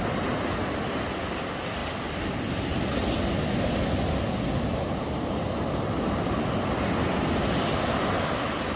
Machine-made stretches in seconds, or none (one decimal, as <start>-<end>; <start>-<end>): none